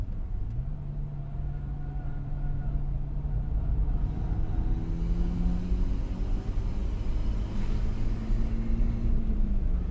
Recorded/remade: recorded